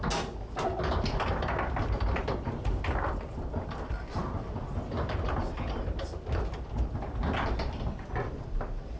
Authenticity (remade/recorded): recorded